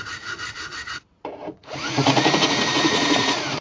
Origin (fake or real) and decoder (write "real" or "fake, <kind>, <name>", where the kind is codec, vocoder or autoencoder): fake, vocoder, Vocos